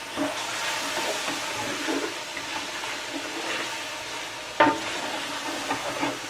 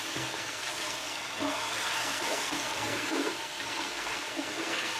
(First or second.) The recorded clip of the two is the first